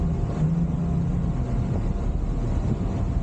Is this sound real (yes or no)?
yes